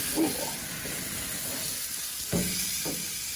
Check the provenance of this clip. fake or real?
real